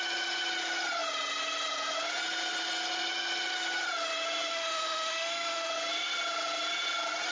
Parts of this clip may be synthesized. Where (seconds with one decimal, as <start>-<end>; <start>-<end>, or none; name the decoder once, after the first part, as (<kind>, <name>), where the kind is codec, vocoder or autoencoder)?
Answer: 4.5-5.7 (autoencoder, DAC-VAE)

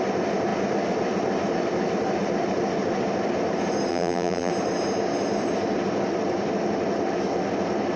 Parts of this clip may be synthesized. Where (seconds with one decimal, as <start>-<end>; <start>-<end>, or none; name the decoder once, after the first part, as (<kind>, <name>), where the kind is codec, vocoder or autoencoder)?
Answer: 3.9-4.5 (vocoder, BigVGAN v2)

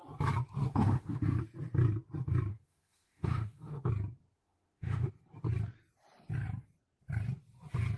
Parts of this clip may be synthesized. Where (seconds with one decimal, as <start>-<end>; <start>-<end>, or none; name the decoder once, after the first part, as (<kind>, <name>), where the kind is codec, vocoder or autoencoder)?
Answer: 0.7-1.4 (autoencoder, DAC-VAE); 2.5-3.9; 4.4-5.1

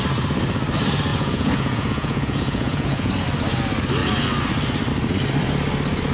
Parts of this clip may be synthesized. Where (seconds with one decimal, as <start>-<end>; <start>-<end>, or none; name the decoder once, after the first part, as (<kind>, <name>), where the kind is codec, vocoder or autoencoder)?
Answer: 1.1-3.1 (vocoder, Vocos)

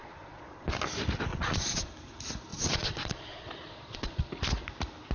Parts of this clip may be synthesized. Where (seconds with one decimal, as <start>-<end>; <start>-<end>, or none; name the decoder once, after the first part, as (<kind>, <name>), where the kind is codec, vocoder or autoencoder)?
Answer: 0.0-0.7 (vocoder, Vocos); 1.3-1.9; 2.5-4.3

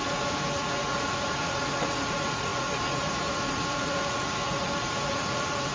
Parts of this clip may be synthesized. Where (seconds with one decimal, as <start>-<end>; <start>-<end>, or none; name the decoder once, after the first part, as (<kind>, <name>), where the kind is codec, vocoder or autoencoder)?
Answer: 0.0-5.7 (vocoder, Vocos)

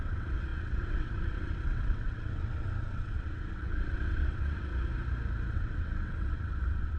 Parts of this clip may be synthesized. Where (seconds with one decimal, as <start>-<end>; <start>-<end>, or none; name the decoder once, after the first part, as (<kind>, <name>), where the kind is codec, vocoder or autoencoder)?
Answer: 0.0-4.7 (vocoder, WaveNeXt); 5.5-7.0